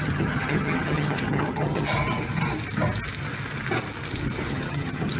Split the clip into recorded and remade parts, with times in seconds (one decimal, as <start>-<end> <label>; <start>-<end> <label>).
0.0-1.9 remade; 1.9-4.5 recorded; 4.5-5.2 remade